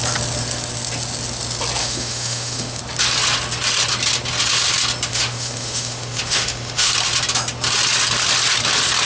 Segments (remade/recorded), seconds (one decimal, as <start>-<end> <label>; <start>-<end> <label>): 0.0-1.8 recorded; 1.8-2.8 remade; 2.8-5.1 recorded; 5.1-6.9 remade; 6.9-9.1 recorded